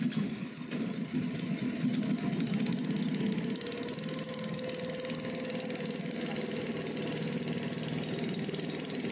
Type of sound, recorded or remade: recorded